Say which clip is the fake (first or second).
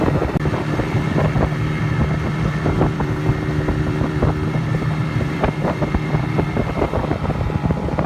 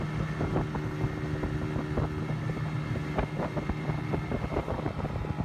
first